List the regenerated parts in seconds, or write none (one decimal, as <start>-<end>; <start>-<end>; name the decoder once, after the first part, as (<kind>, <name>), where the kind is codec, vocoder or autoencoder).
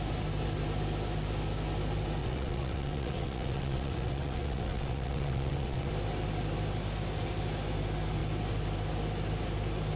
2.2-5.9 (vocoder, WaveNeXt)